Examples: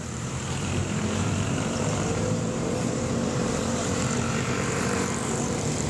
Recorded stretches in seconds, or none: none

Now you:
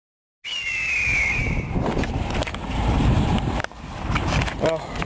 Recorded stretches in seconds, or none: 0.0-1.4; 3.4-5.0

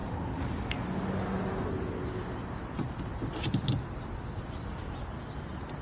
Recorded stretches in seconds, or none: 0.0-5.8

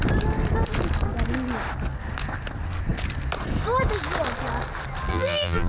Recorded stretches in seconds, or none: 0.0-5.1

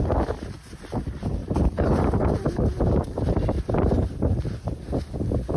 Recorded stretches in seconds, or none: 0.0-1.4; 4.8-5.6

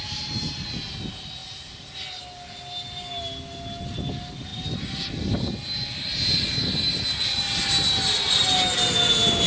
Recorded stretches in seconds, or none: 0.0-9.5